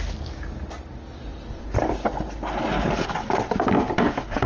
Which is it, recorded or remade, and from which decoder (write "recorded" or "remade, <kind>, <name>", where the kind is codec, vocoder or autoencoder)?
recorded